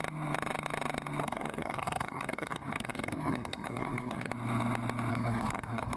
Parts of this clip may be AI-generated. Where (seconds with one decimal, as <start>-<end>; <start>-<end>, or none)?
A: 1.2-4.3; 5.1-6.0